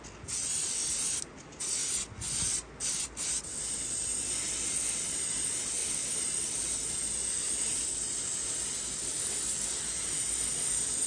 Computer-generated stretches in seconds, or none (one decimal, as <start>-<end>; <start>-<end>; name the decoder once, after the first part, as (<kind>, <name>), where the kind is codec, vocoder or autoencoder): none